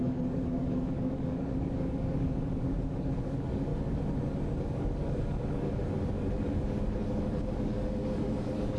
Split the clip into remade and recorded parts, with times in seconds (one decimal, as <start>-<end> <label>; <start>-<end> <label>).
0.0-3.7 remade; 3.7-4.6 recorded; 4.6-8.8 remade

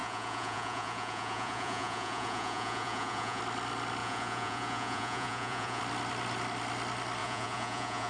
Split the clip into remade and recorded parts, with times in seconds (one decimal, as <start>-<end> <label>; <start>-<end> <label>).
0.0-3.4 remade; 3.4-4.0 recorded; 4.0-5.8 remade; 5.8-7.2 recorded; 7.2-8.1 remade